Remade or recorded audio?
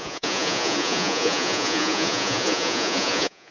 remade